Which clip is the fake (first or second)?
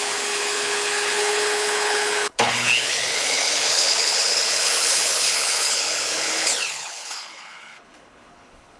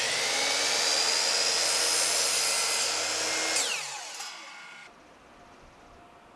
first